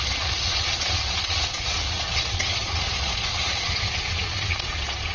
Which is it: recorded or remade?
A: remade